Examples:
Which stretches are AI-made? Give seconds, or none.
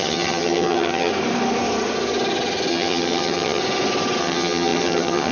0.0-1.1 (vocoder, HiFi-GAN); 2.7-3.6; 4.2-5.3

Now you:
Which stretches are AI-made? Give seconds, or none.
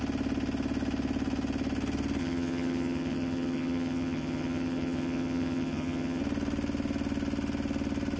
2.2-6.2 (vocoder, HiFi-GAN)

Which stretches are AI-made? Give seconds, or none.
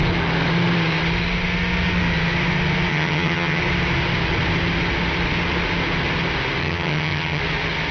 2.9-3.6 (vocoder, HiFi-GAN); 6.6-7.4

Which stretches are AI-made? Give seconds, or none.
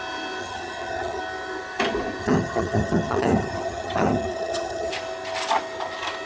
0.4-1.2 (vocoder, HiFi-GAN); 2.2-4.9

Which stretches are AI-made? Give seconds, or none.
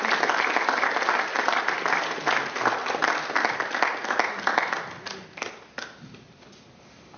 none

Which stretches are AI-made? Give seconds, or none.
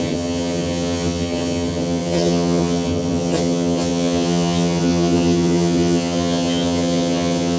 0.0-7.6 (vocoder, HiFi-GAN)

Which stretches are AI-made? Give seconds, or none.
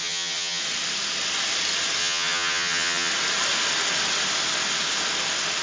0.0-0.6 (vocoder, HiFi-GAN); 2.0-3.1